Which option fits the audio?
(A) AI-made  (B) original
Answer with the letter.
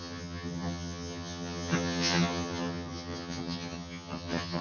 A